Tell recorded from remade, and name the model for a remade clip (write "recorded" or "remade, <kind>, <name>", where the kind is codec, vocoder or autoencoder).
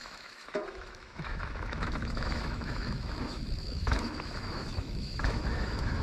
remade, autoencoder, DAC-VAE